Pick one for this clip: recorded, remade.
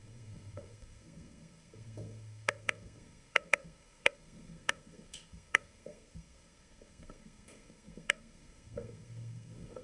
remade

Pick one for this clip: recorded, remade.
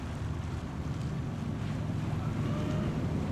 recorded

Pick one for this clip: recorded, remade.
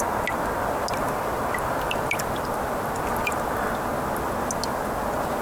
recorded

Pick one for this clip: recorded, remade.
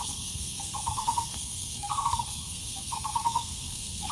remade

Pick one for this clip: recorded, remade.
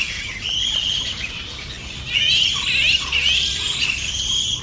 recorded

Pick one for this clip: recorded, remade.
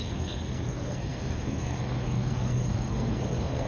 remade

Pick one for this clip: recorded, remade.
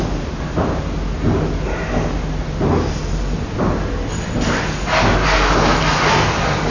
recorded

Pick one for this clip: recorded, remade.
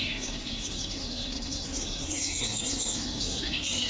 remade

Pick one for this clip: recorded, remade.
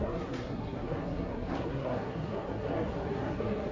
remade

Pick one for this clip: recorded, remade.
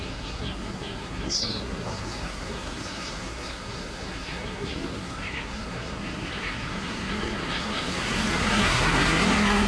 remade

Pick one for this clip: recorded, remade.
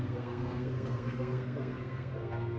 remade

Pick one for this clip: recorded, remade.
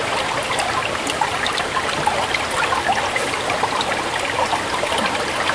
recorded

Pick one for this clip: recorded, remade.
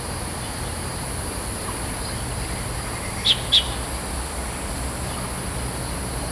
recorded